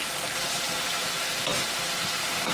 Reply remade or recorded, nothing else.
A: recorded